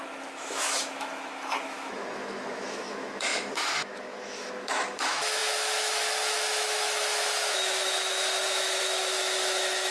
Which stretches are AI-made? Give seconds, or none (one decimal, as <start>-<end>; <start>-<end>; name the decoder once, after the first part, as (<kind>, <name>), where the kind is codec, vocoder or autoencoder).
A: 0.0-9.9 (autoencoder, DAC-VAE)